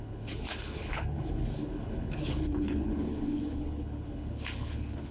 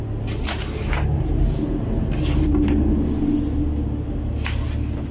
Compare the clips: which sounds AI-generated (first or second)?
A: first